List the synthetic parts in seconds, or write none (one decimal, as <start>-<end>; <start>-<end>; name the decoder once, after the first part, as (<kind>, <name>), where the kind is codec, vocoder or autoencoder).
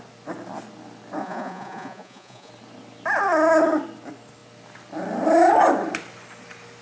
1.2-2.5 (vocoder, Vocos)